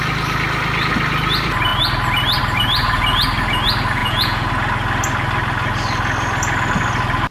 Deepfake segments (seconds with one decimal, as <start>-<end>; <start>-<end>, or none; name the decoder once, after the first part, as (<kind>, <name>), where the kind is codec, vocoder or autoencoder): 4.0-4.5 (vocoder, Vocos)